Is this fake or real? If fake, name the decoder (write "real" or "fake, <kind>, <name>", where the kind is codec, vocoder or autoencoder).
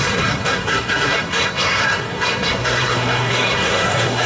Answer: fake, codec, SNAC